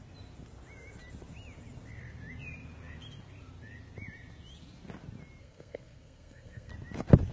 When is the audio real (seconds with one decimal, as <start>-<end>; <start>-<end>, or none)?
0.0-5.4; 6.7-7.3